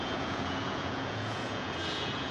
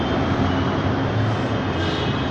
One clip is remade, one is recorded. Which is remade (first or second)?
first